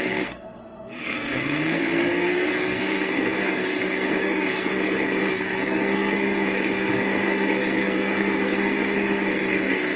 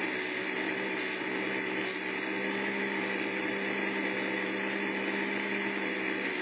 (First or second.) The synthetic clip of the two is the first